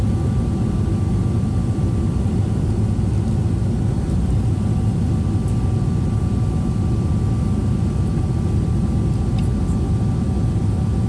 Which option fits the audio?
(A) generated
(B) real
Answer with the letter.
B